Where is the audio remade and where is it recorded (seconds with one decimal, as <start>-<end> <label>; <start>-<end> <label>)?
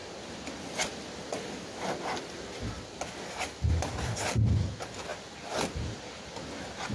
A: 0.0-6.9 recorded